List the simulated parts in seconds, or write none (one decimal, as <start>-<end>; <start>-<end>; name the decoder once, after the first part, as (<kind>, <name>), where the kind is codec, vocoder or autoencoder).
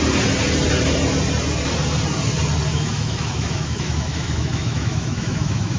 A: 2.7-5.8 (autoencoder, DAC-VAE)